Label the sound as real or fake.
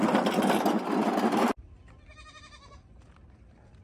real